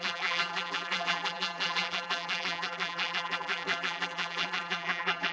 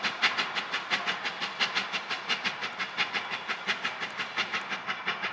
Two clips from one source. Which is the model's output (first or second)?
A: first